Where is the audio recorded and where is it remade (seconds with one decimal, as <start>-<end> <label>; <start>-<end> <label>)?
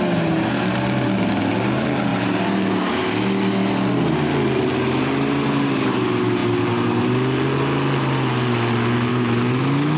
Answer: 0.0-9.1 recorded; 9.1-10.0 remade